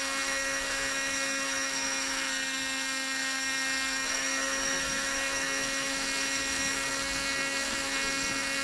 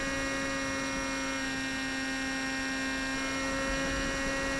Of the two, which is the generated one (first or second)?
first